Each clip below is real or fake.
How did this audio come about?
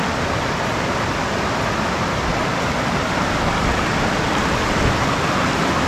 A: real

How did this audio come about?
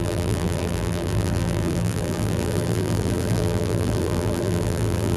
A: fake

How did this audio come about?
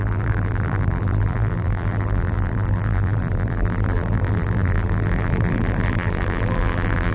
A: fake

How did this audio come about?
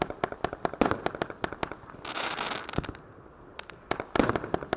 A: real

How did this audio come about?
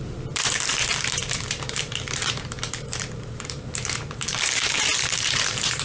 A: fake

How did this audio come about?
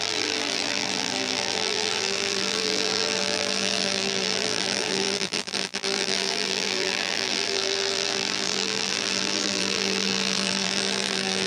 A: fake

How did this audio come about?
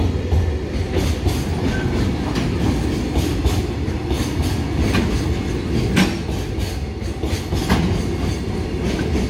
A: real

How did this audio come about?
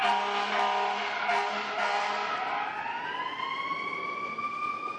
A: real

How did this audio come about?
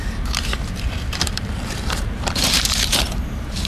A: fake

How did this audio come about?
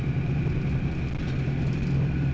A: fake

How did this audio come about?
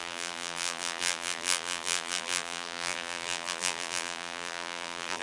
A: fake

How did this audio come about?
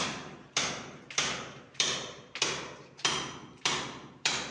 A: fake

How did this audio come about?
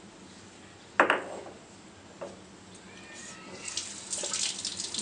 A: real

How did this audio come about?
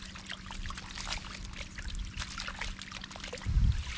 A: real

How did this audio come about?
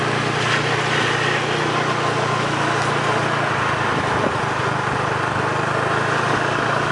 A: real